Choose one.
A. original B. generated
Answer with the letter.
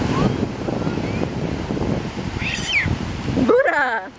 A